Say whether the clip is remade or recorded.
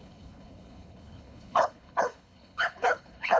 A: remade